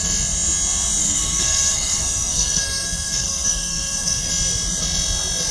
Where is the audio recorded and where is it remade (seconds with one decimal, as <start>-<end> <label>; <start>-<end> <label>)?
0.0-1.0 recorded; 1.0-4.3 remade; 4.3-5.5 recorded